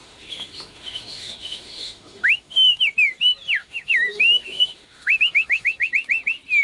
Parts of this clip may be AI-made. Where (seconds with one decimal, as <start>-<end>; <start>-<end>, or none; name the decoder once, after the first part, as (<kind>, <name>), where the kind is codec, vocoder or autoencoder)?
0.0-2.8 (autoencoder, DAC-VAE); 3.6-5.9